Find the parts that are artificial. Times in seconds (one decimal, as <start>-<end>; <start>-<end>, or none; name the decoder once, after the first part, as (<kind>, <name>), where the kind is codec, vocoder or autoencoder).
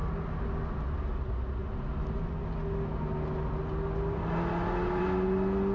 none